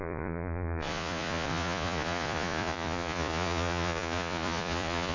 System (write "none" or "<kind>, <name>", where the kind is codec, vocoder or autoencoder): vocoder, Vocos